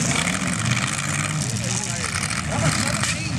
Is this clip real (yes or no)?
yes